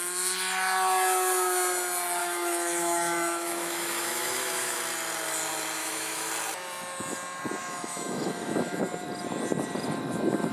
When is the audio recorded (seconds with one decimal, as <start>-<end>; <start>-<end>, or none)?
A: 0.0-2.2; 4.8-5.8; 6.3-7.6; 8.8-10.5